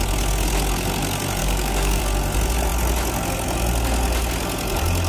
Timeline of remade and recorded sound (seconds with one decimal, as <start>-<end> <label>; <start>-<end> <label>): 0.0-1.4 recorded; 1.4-2.0 remade; 2.0-5.1 recorded